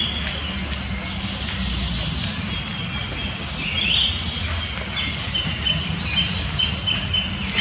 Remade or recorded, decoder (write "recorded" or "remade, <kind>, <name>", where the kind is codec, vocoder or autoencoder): recorded